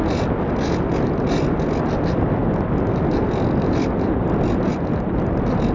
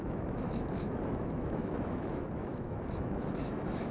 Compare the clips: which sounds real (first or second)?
first